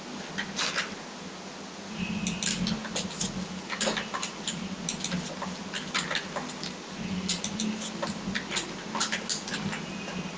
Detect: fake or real real